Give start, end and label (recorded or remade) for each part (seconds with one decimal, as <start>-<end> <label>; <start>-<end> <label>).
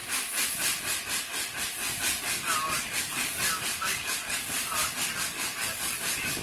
0.0-2.0 recorded; 2.0-4.6 remade; 4.6-5.3 recorded; 5.3-6.4 remade